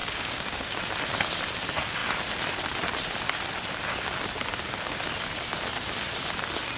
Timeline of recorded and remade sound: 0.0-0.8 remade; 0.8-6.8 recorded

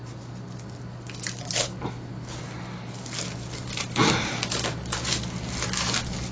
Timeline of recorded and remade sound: 0.0-6.3 recorded

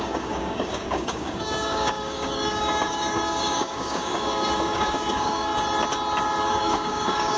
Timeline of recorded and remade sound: 0.0-5.5 remade; 5.5-6.4 recorded; 6.4-7.4 remade